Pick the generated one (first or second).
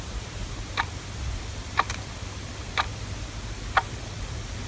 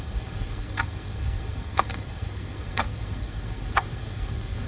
second